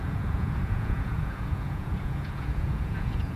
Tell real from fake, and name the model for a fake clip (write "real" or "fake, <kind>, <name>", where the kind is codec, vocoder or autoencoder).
fake, vocoder, Vocos